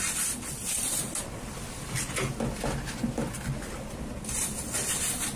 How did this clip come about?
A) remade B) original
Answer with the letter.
B